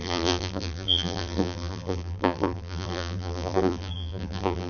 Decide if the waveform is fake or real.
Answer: fake